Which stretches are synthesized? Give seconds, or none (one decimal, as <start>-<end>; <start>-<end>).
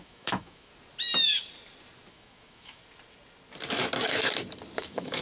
0.0-0.7; 2.1-2.8; 4.8-5.2